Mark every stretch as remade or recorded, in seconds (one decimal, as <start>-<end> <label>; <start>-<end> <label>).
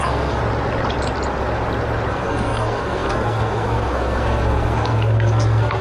0.0-0.4 remade; 0.4-2.1 recorded; 2.1-5.8 remade